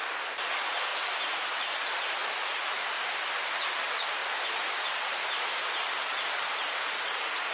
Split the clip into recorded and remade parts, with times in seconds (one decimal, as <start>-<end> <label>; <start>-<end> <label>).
0.0-7.5 recorded